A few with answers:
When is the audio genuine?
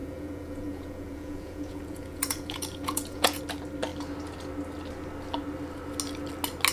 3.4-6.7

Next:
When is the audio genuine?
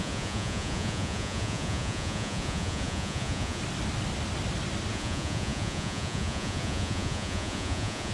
3.6-4.9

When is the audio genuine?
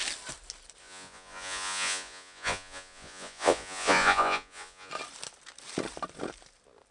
0.0-0.8; 4.9-6.9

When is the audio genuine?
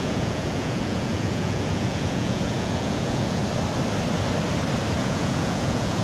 3.4-5.0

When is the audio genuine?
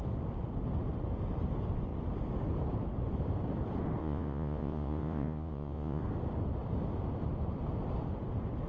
0.0-4.0; 6.0-8.7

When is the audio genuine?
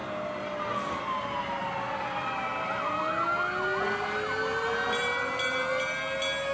0.0-6.5